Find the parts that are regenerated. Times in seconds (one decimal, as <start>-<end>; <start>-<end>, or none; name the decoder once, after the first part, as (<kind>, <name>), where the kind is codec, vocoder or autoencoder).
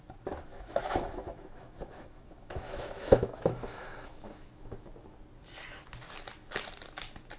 0.5-4.9 (autoencoder, DAC-VAE)